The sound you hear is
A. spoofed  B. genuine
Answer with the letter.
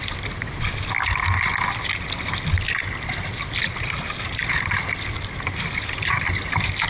B